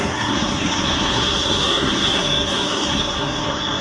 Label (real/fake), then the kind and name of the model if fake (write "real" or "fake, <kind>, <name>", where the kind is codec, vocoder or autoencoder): fake, codec, SNAC